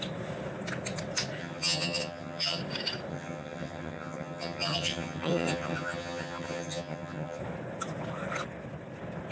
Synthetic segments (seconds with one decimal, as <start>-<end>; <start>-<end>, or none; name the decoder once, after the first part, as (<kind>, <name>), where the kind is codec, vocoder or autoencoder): 1.4-2.6 (vocoder, HiFi-GAN); 3.1-7.4